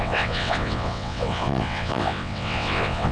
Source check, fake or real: fake